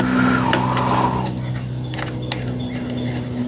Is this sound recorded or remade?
recorded